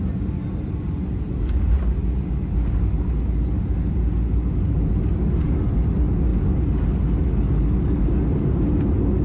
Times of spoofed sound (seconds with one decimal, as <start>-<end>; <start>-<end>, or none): none